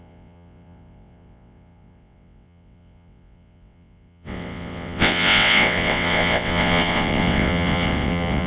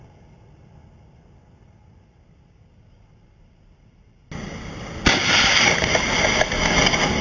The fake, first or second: first